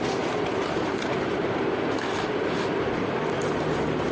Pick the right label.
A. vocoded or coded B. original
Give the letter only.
B